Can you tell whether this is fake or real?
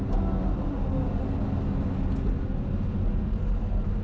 real